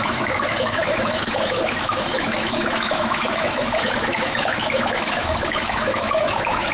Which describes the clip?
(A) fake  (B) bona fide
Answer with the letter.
A